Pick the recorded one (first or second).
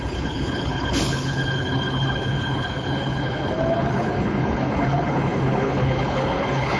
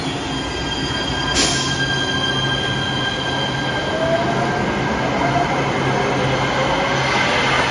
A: second